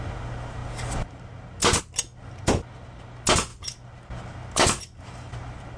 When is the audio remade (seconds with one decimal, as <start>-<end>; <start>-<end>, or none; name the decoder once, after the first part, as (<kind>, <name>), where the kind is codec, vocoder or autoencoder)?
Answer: none